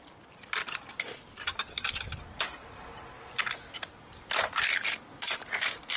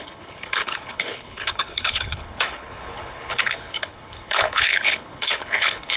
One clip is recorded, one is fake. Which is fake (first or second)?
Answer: second